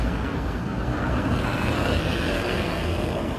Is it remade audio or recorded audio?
remade